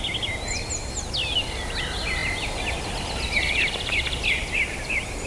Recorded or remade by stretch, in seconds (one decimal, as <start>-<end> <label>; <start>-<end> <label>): 0.0-5.3 recorded